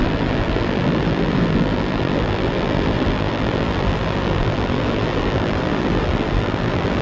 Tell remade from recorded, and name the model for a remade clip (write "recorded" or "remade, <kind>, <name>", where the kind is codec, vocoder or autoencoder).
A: remade, vocoder, BigVGAN v2